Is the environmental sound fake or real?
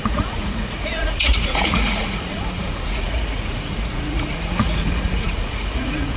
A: fake